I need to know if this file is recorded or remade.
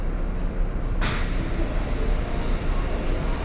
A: recorded